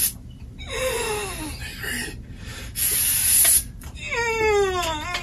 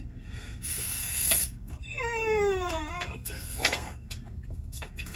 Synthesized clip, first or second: second